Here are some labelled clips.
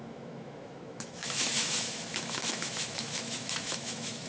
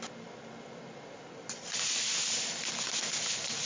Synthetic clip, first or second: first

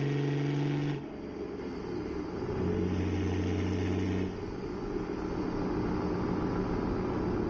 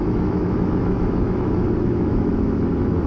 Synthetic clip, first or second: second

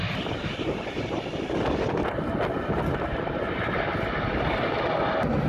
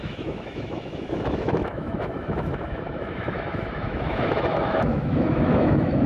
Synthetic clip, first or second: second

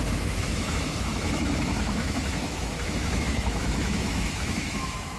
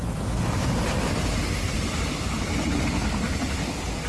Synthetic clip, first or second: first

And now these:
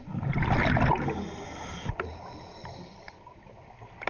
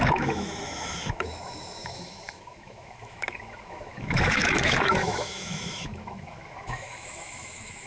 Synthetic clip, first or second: second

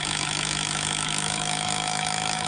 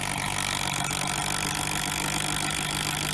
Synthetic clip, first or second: first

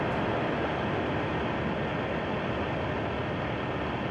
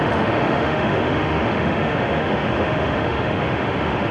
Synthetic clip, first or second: second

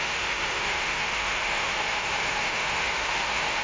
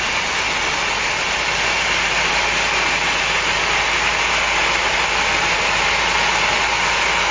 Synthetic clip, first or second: first